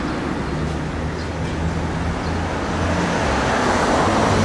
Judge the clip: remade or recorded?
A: recorded